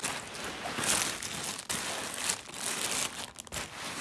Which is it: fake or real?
real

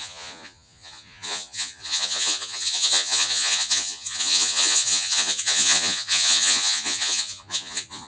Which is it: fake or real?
fake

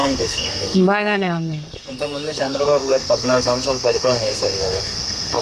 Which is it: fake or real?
fake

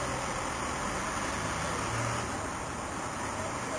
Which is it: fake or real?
real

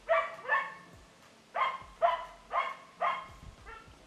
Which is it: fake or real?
fake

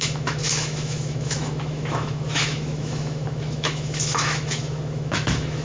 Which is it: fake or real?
fake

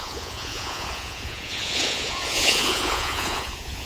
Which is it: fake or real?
fake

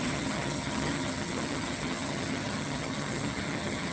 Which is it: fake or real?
fake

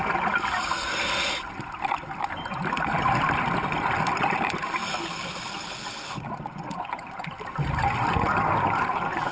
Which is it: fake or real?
real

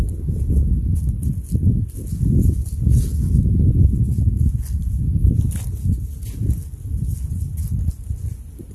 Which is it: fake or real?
real